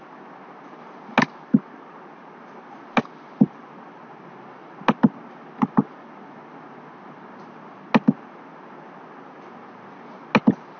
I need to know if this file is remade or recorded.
recorded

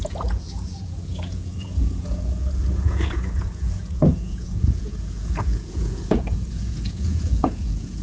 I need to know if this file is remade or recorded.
remade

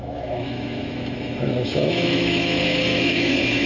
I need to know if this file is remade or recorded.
remade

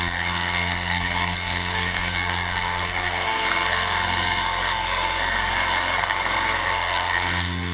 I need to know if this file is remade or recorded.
remade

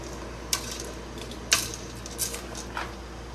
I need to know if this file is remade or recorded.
recorded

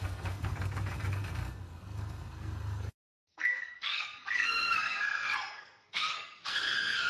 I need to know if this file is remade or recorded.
remade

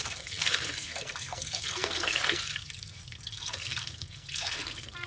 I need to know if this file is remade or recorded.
remade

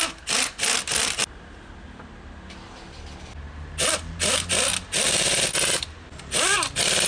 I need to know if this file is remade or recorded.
recorded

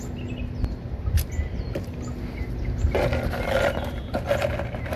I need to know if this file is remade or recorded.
recorded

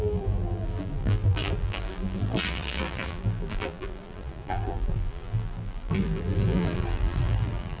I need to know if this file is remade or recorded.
remade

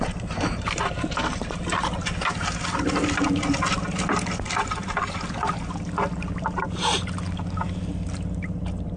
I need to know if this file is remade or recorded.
recorded